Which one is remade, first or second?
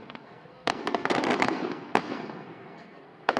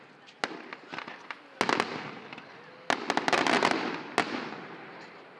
first